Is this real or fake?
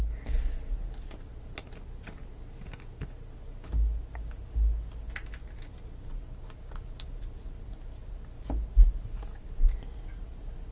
real